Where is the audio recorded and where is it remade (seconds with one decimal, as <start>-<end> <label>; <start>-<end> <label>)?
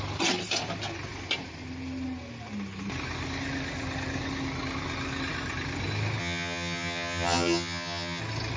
0.0-6.2 recorded; 6.2-8.2 remade; 8.2-8.6 recorded